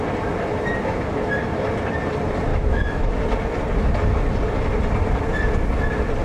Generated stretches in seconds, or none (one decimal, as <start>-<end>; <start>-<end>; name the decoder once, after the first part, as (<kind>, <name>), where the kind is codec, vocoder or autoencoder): 2.5-3.1 (autoencoder, DAC-VAE)